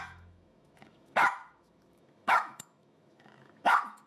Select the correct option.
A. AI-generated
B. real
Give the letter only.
A